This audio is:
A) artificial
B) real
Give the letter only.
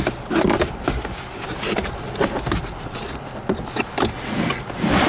B